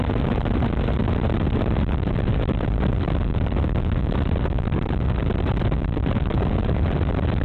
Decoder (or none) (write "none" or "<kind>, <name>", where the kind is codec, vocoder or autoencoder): vocoder, BigVGAN v2